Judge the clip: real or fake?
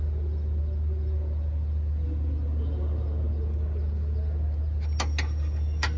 real